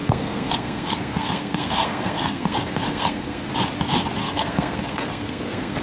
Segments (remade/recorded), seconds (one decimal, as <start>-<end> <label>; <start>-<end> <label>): 0.0-3.5 remade; 3.5-4.2 recorded; 4.2-5.8 remade